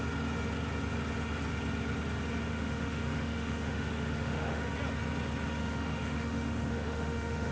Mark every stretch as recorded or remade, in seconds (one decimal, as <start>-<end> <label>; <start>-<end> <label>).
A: 0.0-2.5 recorded; 2.5-4.6 remade; 4.6-5.6 recorded; 5.6-7.5 remade